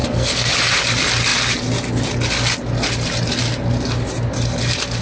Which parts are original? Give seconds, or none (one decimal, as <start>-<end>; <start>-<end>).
0.5-5.0